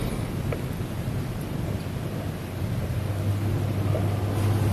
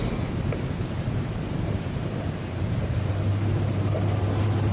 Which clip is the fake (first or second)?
second